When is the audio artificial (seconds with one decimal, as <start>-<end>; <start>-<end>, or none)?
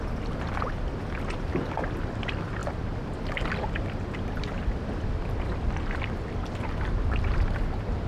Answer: none